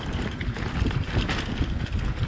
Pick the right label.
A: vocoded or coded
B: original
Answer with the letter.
B